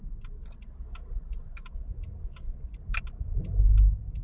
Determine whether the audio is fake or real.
real